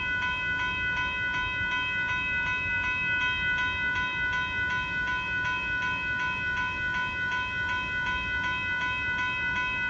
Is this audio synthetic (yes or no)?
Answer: no